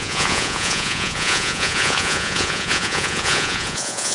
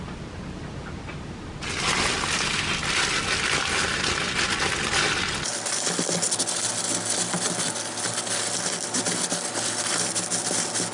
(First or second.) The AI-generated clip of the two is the first